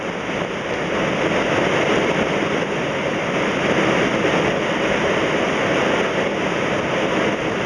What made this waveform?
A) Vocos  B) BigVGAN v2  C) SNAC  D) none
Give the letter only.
D